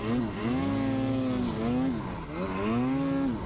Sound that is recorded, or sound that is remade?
recorded